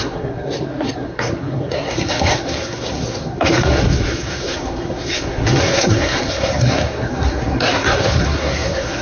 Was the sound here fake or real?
fake